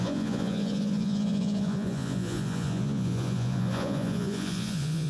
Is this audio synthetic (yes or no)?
yes